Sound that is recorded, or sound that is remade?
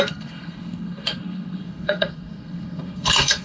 remade